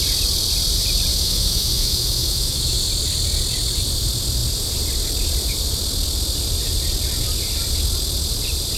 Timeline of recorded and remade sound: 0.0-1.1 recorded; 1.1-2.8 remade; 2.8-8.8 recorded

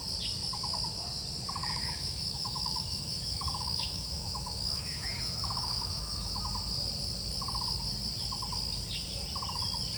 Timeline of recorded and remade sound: 0.0-1.6 recorded; 1.6-6.4 remade; 6.4-10.0 recorded

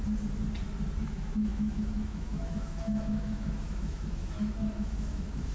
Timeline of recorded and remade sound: 0.0-1.0 recorded; 1.0-5.5 remade